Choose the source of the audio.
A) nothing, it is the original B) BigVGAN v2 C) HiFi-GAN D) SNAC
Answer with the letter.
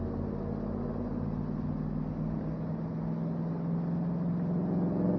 A